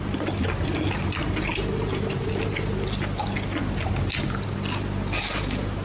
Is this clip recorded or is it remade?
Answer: recorded